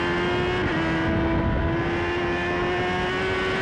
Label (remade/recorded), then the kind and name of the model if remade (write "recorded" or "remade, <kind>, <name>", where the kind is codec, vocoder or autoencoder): recorded